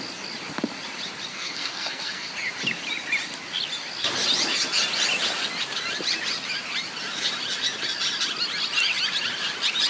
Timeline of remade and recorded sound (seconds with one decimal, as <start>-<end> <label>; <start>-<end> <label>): 0.0-1.3 recorded; 1.3-2.3 remade; 2.3-9.9 recorded